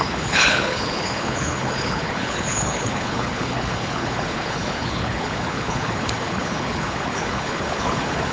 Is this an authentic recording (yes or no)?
no